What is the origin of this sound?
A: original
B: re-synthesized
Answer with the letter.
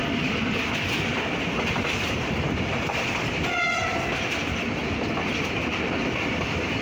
B